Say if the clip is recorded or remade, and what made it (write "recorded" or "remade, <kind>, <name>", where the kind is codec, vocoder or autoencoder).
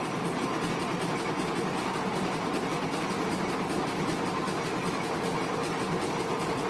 recorded